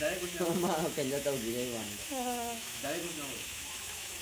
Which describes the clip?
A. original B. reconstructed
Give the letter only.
B